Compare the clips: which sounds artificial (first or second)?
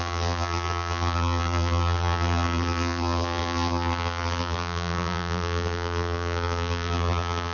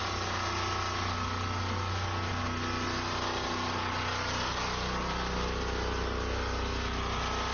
first